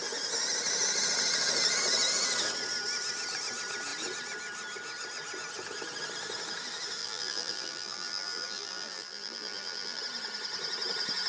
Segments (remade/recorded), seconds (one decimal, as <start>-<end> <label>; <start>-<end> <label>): 0.0-7.0 recorded; 7.0-10.0 remade; 10.0-11.3 recorded